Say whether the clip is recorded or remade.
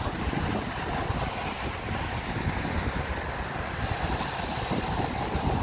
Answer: recorded